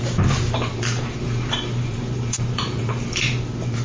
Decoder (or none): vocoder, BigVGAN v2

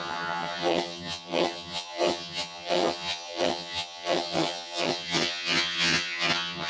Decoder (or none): vocoder, HiFi-GAN